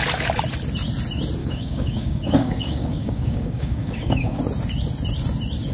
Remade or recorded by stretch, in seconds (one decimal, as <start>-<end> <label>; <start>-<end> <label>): 0.0-1.4 recorded; 1.4-4.4 remade; 4.4-5.7 recorded